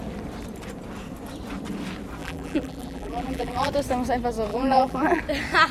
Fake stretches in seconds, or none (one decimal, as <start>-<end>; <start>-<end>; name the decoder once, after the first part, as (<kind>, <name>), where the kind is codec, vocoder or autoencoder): 2.2-3.7 (vocoder, BigVGAN v2); 4.5-5.2